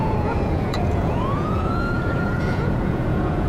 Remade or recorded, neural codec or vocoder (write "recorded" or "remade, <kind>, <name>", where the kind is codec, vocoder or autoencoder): remade, vocoder, Vocos